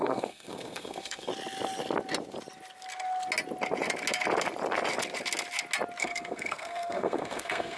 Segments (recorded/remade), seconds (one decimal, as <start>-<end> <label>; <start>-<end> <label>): 0.0-1.3 remade; 1.3-6.0 recorded; 6.0-7.8 remade